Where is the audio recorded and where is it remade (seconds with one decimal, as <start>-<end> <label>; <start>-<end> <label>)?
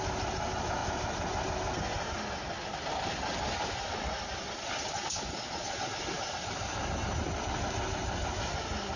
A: 0.0-9.0 recorded